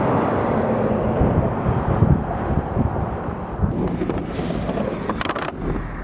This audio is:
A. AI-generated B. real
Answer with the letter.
B